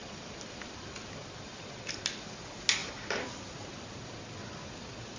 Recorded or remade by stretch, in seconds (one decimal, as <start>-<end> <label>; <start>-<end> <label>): 0.0-2.0 remade; 2.0-2.8 recorded; 2.8-3.5 remade; 3.5-5.2 recorded